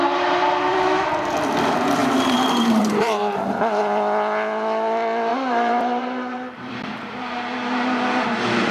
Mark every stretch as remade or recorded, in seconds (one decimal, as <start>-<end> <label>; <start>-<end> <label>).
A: 0.0-2.0 recorded; 2.0-3.5 remade; 3.5-5.3 recorded; 5.3-6.8 remade; 6.8-8.7 recorded